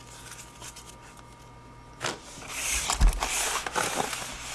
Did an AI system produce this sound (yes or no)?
no